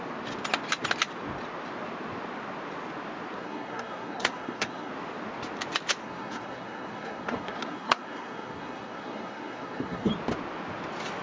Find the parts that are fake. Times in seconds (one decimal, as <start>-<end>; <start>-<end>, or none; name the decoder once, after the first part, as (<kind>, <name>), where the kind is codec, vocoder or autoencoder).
3.4-4.9 (codec, SNAC); 6.0-10.1